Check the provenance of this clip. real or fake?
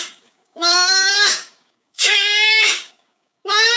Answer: fake